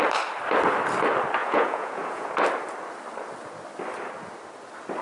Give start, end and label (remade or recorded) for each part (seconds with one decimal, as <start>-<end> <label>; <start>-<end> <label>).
0.0-1.4 recorded; 1.4-2.3 remade; 2.3-5.0 recorded